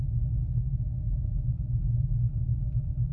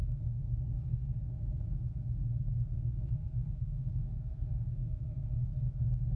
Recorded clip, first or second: first